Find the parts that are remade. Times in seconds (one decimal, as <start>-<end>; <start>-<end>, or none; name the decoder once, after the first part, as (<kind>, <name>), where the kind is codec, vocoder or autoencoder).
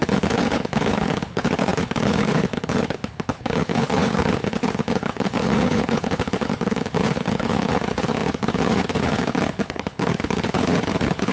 0.0-11.3 (codec, HILCodec)